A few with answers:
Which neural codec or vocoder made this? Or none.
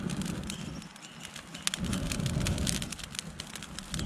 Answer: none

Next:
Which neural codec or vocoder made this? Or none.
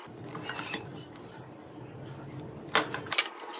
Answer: none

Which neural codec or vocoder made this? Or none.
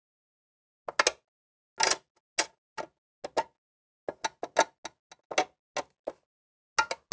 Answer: none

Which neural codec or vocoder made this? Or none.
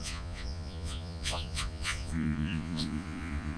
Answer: vocoder, Vocos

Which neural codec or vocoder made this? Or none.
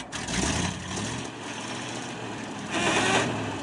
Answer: none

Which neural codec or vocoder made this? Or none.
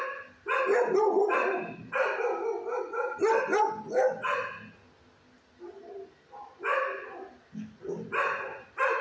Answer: none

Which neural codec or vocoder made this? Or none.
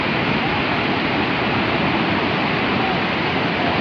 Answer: none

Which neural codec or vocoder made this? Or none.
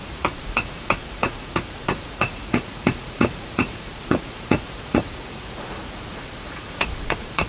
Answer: vocoder, Vocos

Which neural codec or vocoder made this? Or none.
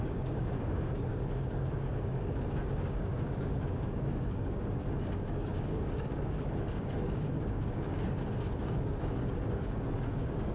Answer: codec, DAC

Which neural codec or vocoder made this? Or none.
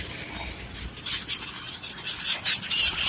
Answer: none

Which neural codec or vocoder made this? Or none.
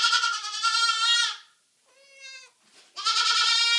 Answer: none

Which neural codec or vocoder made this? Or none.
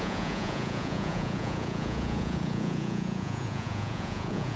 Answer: vocoder, Vocos